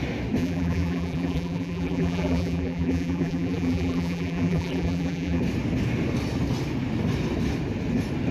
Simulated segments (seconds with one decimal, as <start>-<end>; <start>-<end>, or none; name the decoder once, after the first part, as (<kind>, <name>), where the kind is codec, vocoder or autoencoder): 0.4-5.4 (vocoder, BigVGAN v2)